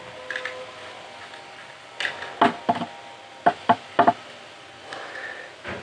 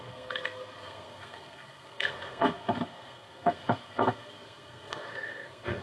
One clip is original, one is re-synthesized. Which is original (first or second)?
first